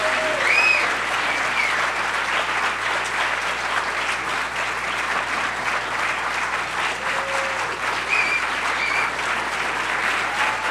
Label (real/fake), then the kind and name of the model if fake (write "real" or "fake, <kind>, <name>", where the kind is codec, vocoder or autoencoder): real